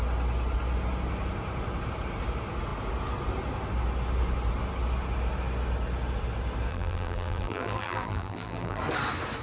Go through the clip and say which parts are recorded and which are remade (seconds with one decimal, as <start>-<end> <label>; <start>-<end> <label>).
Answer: 0.0-6.7 recorded; 6.7-8.8 remade; 8.8-9.4 recorded